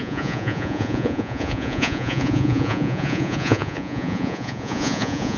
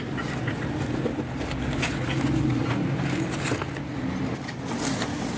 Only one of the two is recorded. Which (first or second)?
second